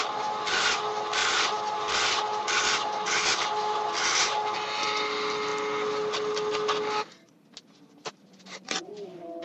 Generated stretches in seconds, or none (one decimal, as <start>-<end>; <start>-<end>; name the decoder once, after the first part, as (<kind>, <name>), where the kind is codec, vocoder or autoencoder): none